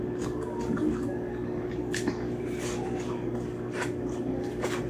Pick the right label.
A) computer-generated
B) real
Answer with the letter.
A